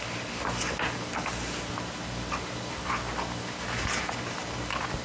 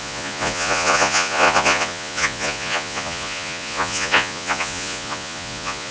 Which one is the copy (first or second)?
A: second